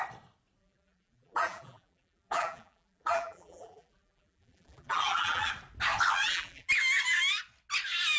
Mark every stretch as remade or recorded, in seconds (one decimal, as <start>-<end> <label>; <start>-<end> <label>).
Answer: 0.0-0.6 recorded; 0.6-5.5 remade; 5.5-6.2 recorded; 6.2-6.7 remade; 6.7-8.2 recorded